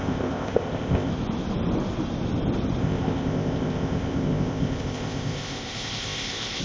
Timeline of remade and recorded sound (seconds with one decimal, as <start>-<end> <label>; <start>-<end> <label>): 0.0-1.1 remade; 1.1-2.8 recorded; 2.8-6.6 remade